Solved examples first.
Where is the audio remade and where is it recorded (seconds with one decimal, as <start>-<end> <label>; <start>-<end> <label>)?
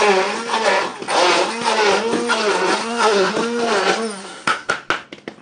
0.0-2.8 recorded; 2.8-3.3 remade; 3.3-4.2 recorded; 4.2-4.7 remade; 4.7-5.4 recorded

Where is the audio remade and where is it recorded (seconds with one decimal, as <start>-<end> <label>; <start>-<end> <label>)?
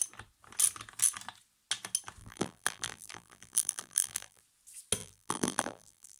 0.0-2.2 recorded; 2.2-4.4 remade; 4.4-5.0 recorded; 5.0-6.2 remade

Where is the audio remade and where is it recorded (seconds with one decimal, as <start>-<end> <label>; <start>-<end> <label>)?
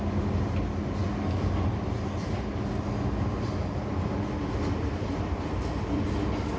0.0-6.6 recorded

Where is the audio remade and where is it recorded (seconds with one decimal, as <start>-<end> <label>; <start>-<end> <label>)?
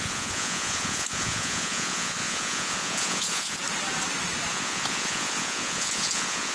0.0-3.6 remade; 3.6-4.5 recorded; 4.5-6.5 remade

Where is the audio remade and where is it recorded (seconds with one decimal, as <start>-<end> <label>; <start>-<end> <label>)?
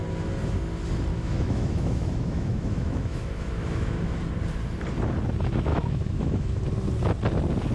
0.0-1.1 recorded; 1.1-4.2 remade; 4.2-5.7 recorded; 5.7-6.6 remade; 6.6-7.7 recorded